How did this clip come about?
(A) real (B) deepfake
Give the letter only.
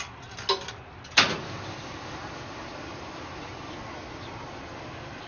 A